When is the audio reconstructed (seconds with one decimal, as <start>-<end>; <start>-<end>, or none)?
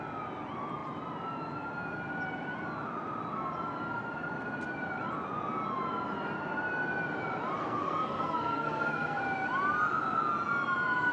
7.6-9.2